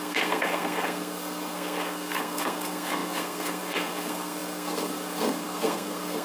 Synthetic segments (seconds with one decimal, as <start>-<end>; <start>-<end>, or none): 0.0-6.2

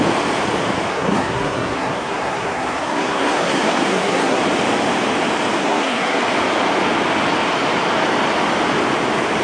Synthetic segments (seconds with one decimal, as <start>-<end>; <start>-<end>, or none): 0.9-4.4; 5.6-6.2

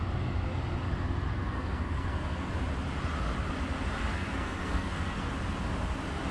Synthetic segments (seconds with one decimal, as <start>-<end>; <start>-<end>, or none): 1.3-2.5; 4.1-5.3

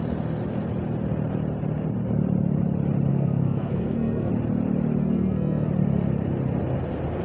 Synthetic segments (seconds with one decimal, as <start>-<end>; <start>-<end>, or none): 3.1-4.3; 5.0-5.7

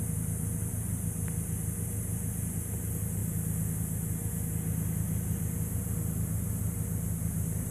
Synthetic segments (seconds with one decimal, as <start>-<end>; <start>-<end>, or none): none

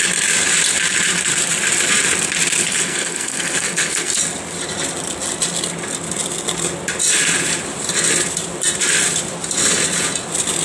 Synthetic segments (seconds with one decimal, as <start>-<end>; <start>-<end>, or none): 2.6-4.2

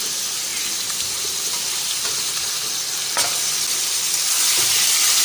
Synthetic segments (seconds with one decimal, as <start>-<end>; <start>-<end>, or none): none

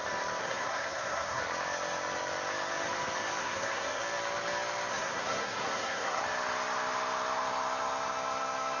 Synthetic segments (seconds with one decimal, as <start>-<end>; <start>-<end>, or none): 0.4-1.4; 3.4-4.0; 4.9-6.2